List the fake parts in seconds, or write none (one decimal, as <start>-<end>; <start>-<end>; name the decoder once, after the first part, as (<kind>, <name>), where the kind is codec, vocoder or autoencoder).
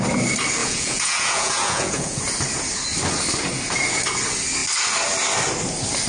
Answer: 0.6-2.2 (vocoder, Vocos)